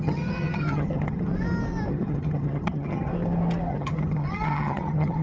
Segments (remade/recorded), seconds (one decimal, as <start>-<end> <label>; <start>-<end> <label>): 0.0-1.3 remade; 1.3-1.9 recorded; 1.9-3.1 remade; 3.1-3.7 recorded; 3.7-5.2 remade